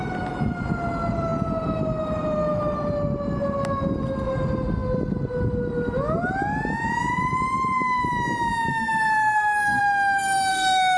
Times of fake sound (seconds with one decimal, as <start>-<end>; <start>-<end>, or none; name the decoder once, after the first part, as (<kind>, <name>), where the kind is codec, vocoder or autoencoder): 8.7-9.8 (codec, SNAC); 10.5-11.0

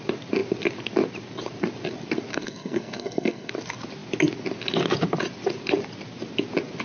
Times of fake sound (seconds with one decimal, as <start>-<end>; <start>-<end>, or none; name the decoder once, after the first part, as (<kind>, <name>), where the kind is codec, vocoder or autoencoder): 2.3-3.5 (codec, SNAC)

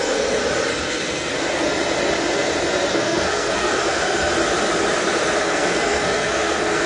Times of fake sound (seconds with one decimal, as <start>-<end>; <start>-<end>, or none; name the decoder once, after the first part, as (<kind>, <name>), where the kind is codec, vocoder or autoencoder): 0.0-0.4 (codec, SNAC); 0.9-1.3; 2.9-4.3; 5.4-6.9